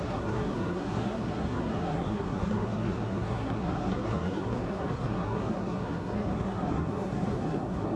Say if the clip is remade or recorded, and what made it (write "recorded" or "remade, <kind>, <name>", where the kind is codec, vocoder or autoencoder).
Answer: remade, codec, SNAC